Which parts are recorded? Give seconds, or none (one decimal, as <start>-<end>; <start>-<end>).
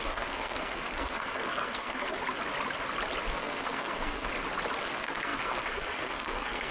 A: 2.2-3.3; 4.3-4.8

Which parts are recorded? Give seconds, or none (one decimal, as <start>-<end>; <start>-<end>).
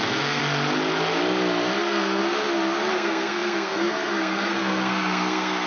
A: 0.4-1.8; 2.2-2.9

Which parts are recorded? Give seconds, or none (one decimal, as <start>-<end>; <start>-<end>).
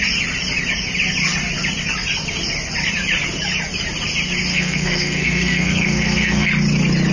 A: 0.0-4.5; 6.5-7.1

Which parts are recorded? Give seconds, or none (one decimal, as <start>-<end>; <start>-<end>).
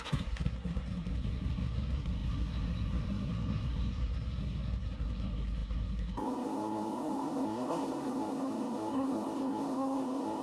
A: none